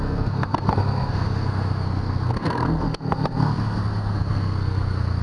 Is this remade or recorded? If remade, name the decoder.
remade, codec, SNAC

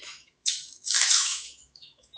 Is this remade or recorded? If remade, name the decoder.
remade, autoencoder, DAC-VAE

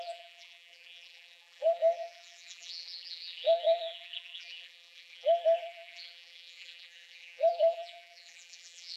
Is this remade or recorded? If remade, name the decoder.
remade, vocoder, BigVGAN v2